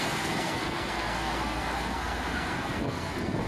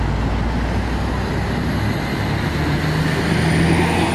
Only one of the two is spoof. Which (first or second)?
first